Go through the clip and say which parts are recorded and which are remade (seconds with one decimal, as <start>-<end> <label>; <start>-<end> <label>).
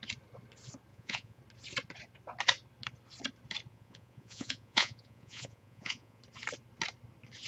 0.0-0.9 recorded; 0.9-1.4 remade; 1.4-3.7 recorded; 3.7-6.2 remade; 6.2-7.5 recorded